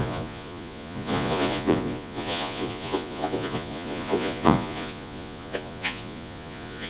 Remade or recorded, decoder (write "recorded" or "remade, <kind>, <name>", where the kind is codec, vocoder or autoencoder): remade, vocoder, Vocos